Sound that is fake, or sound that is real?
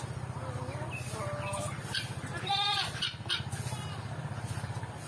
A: real